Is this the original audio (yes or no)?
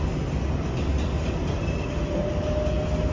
yes